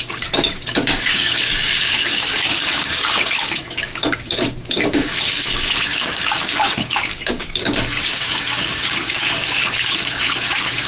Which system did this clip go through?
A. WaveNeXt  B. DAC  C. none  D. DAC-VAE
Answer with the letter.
B